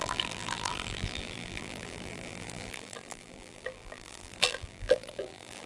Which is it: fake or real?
fake